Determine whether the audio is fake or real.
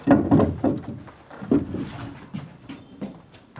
real